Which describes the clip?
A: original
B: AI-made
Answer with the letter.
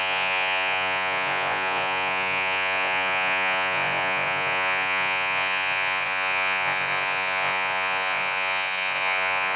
B